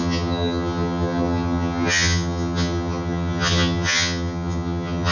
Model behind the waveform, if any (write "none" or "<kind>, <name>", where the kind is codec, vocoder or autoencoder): vocoder, HiFi-GAN